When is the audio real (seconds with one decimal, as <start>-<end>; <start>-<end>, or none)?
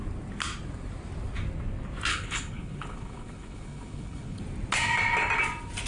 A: 0.0-2.1; 4.4-5.9